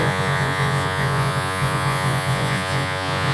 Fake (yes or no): yes